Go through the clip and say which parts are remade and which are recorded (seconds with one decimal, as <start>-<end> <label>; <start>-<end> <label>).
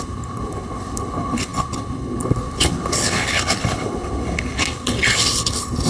0.0-5.9 remade